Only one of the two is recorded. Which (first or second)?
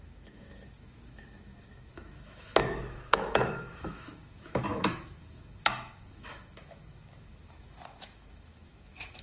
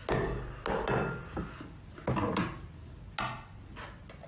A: second